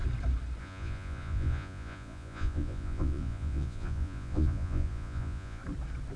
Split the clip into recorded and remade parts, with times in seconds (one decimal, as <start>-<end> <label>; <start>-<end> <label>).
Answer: 0.0-0.6 recorded; 0.6-5.6 remade; 5.6-6.2 recorded